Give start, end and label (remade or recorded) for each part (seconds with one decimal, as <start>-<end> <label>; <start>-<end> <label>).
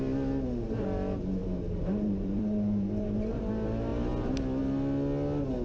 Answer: 0.0-1.4 recorded; 1.4-3.5 remade; 3.5-5.6 recorded